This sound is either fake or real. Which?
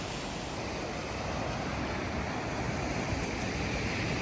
real